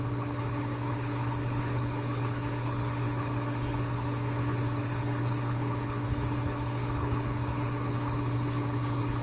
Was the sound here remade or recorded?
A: remade